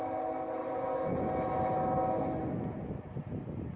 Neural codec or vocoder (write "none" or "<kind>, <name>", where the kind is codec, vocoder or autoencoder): none